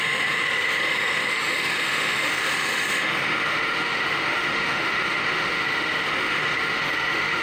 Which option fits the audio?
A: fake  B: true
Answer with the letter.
A